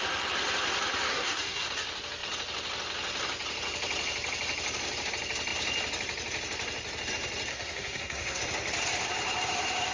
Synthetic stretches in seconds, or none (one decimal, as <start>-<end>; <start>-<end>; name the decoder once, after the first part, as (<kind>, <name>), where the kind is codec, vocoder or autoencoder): 1.1-1.7 (codec, SNAC); 7.5-8.4